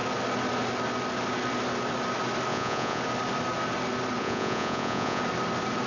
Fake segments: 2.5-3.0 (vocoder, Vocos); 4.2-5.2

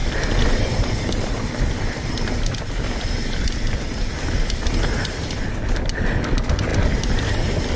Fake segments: 0.0-7.8 (vocoder, BigVGAN v2)

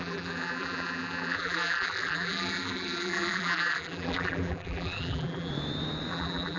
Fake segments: 0.0-5.5 (vocoder, BigVGAN v2); 6.1-6.6

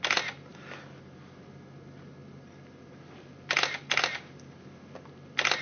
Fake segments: none

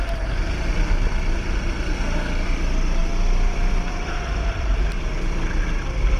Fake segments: 0.7-1.6 (vocoder, BigVGAN v2); 3.0-5.1